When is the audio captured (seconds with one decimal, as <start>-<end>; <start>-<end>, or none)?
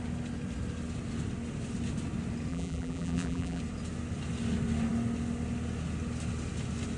0.0-2.5; 3.6-7.0